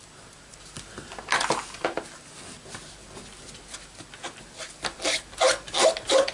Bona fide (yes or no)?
yes